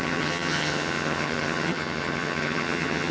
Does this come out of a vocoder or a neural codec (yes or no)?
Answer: yes